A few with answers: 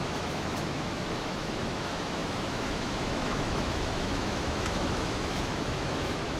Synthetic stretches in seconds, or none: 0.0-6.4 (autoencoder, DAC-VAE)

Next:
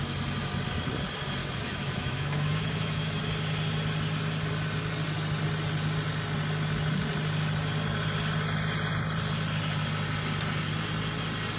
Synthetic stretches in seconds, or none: 1.4-3.2 (autoencoder, DAC-VAE)

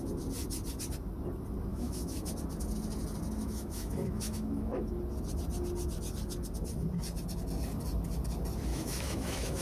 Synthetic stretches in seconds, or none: 1.7-2.3 (autoencoder, DAC-VAE); 3.4-4.9; 8.7-9.6

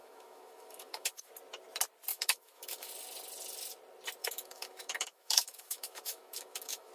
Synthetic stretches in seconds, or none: 0.0-1.3 (autoencoder, DAC-VAE); 2.1-2.9; 4.2-6.9

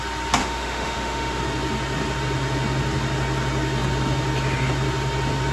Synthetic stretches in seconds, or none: 0.4-1.4 (autoencoder, DAC-VAE)